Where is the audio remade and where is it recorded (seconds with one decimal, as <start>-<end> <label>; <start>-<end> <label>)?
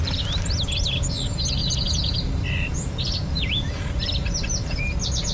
0.0-1.6 recorded; 1.6-4.8 remade; 4.8-5.3 recorded